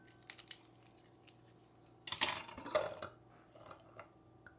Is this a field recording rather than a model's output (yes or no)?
yes